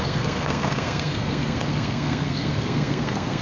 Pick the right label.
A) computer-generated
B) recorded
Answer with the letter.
A